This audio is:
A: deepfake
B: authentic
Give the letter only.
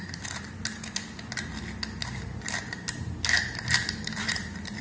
B